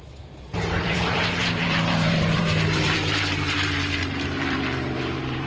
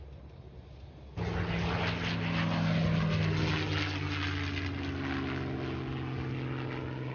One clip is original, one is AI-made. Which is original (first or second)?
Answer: second